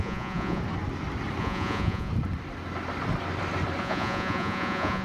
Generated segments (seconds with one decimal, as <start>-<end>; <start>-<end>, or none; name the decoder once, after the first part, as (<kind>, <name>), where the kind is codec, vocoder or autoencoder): 0.0-0.6 (vocoder, Vocos); 1.4-2.1; 3.8-5.0